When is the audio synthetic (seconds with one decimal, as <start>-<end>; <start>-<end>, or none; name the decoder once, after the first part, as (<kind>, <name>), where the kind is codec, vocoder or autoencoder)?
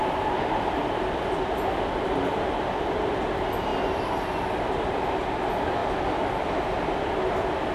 none